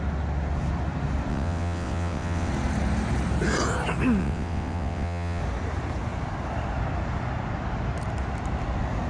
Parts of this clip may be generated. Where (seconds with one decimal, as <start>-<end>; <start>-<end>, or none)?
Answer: 1.3-2.5; 4.2-5.4